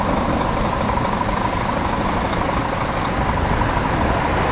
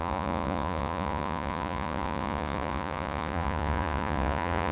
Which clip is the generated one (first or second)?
second